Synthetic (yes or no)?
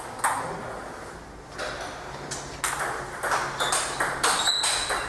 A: no